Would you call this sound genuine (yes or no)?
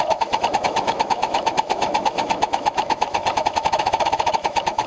no